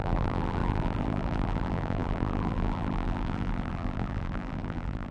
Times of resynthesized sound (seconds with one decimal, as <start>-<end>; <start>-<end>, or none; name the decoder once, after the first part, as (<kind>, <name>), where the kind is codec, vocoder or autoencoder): 0.0-5.1 (vocoder, BigVGAN v2)